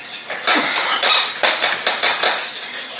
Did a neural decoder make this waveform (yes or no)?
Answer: yes